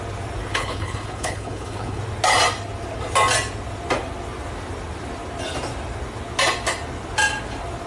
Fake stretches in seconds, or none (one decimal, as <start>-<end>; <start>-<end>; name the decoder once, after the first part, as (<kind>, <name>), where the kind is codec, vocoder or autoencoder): 0.5-2.0 (codec, HILCodec)